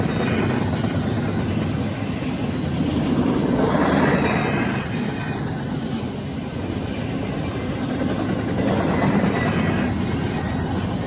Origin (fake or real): real